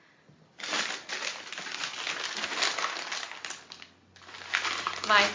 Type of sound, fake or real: real